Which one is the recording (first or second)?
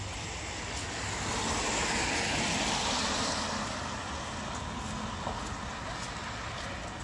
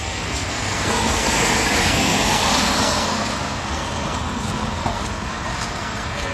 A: first